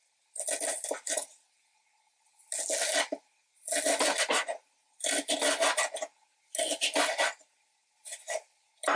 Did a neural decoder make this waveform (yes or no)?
no